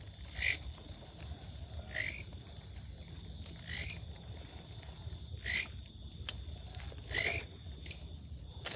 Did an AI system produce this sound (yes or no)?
no